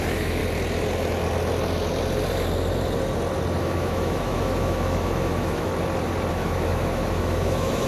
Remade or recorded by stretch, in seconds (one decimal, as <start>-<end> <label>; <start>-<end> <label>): 0.0-0.4 remade; 0.4-3.6 recorded; 3.6-5.7 remade; 5.7-6.3 recorded; 6.3-7.9 remade